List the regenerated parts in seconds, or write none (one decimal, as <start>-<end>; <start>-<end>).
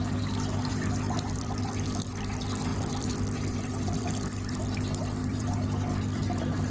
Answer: 0.7-2.1; 2.7-4.5; 5.2-6.7